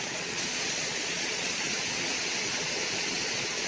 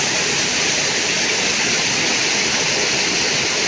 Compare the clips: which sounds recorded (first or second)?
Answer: second